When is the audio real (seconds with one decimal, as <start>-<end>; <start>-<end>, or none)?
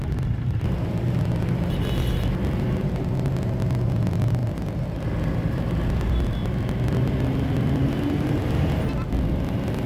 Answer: 0.0-9.9